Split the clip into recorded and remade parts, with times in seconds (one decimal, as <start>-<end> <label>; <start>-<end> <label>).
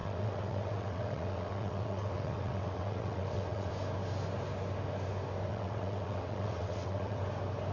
0.0-3.7 remade; 3.7-5.5 recorded; 5.5-7.2 remade; 7.2-7.7 recorded